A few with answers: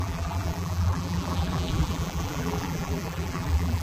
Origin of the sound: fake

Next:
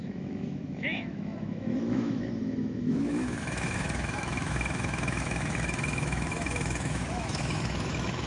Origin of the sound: fake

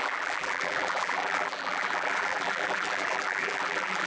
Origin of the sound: fake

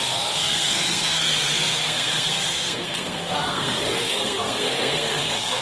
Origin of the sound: fake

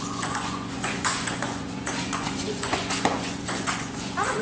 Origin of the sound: fake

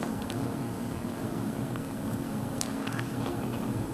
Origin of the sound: fake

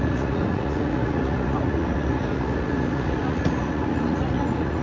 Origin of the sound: fake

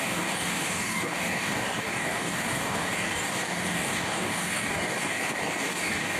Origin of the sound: fake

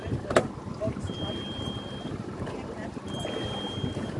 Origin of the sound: real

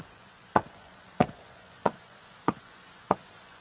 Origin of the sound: fake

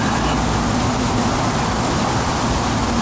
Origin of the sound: real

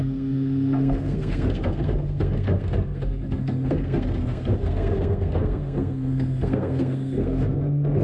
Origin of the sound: fake